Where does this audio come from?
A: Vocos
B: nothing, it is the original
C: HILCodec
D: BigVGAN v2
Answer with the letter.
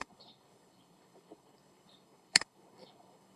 C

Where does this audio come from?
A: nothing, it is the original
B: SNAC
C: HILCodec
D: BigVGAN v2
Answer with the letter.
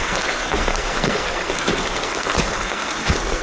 B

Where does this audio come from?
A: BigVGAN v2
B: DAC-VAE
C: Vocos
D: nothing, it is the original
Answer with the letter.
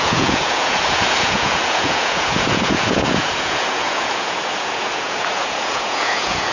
C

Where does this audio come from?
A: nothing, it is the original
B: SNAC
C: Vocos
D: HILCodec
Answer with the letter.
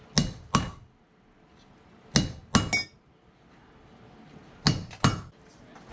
A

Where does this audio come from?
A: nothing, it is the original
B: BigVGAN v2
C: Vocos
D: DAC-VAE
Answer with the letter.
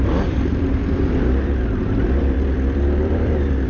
B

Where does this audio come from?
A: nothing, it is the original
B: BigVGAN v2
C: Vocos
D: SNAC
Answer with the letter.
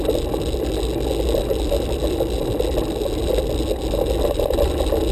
A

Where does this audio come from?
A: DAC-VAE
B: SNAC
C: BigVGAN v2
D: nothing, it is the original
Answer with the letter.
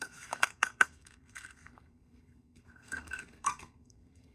B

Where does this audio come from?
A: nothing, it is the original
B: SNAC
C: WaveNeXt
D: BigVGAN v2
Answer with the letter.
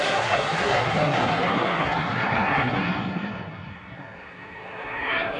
B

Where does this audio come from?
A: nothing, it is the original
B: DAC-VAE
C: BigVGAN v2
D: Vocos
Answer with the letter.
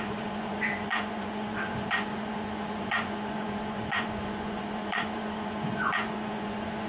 D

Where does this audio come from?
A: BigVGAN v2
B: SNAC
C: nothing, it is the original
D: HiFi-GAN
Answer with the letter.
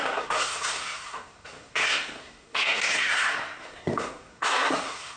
B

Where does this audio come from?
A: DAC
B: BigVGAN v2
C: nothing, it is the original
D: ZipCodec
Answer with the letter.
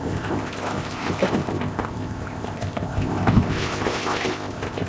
D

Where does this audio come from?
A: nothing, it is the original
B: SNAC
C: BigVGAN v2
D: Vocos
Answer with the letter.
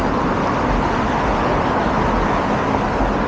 A